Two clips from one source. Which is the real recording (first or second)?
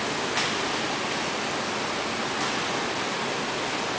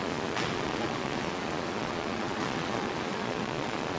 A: first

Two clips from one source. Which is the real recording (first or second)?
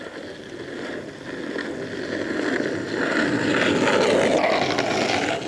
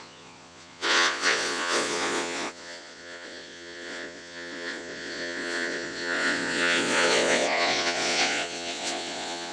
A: first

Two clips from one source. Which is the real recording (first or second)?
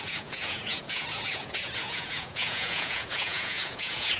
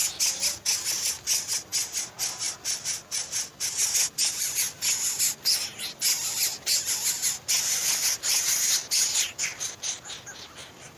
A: second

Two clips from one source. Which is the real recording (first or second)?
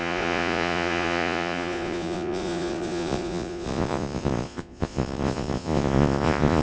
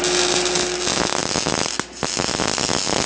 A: second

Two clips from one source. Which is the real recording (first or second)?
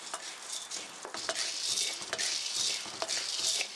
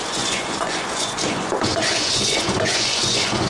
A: first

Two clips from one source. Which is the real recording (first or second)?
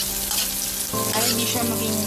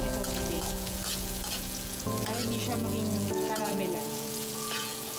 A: first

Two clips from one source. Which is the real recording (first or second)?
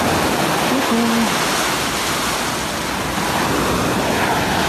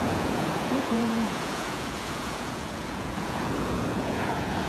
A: first